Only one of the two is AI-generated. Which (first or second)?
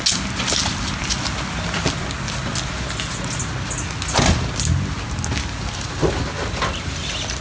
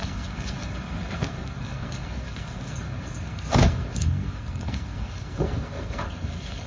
second